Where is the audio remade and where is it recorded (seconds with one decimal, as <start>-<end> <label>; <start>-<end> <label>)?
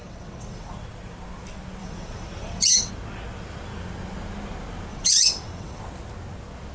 0.0-0.7 remade; 0.7-1.8 recorded; 1.8-2.9 remade; 2.9-4.9 recorded; 4.9-5.8 remade; 5.8-6.7 recorded